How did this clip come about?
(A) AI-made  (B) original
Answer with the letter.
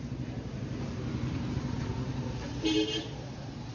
A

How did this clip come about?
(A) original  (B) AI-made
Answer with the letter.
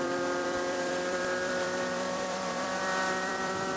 B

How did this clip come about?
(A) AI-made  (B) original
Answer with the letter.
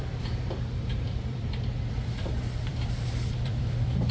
A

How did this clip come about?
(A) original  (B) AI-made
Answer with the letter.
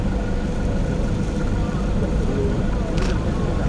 A